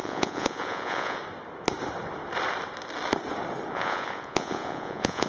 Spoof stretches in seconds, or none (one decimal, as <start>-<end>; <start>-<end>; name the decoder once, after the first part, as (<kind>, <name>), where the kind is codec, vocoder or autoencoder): 0.0-1.2 (vocoder, Vocos); 3.7-5.3